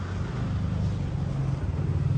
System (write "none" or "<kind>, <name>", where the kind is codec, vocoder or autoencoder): none